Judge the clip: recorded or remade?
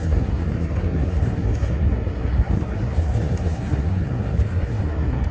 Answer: remade